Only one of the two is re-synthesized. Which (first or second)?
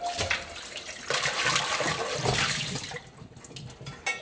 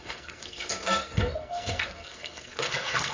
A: second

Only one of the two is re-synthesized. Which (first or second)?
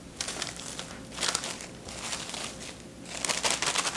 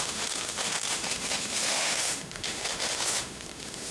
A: second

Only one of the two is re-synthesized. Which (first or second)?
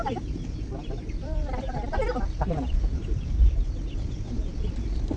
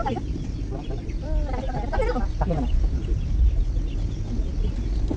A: first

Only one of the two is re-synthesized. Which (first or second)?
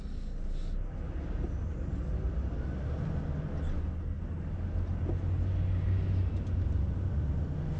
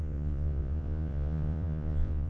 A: second